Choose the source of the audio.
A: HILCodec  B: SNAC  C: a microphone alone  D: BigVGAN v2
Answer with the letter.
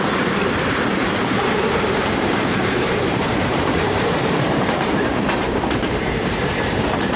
D